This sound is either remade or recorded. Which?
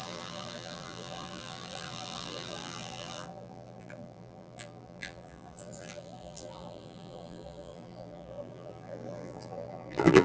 remade